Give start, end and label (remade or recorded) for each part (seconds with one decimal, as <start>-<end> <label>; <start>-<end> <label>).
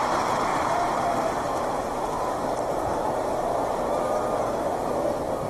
0.0-0.5 recorded; 0.5-3.8 remade; 3.8-5.5 recorded